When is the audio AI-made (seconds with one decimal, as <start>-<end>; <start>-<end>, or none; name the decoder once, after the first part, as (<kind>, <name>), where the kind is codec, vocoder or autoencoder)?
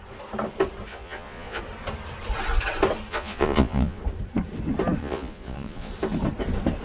0.9-1.6 (vocoder, Vocos); 3.1-4.0; 5.0-5.9